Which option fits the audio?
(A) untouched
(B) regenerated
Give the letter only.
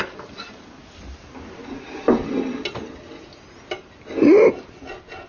A